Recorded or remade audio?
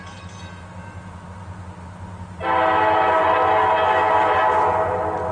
recorded